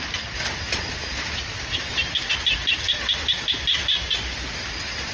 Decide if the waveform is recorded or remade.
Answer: recorded